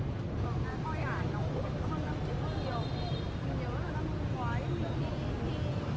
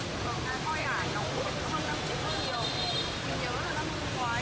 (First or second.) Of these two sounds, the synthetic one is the second